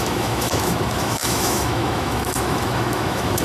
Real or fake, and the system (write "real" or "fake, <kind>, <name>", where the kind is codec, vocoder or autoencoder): fake, autoencoder, DAC-VAE